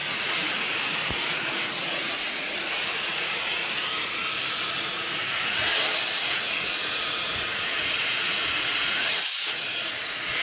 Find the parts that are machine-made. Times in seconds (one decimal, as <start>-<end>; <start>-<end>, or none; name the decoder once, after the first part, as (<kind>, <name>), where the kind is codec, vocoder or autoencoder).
0.0-3.6 (vocoder, Vocos); 4.3-5.7; 6.2-10.4